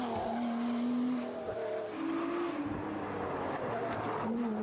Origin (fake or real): real